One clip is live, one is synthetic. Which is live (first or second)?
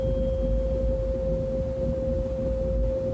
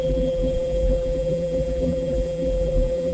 first